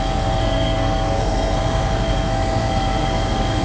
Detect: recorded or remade remade